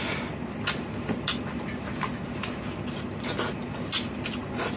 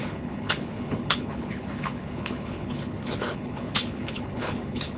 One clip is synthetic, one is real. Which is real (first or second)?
first